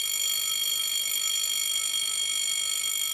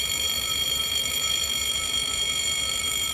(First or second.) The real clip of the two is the first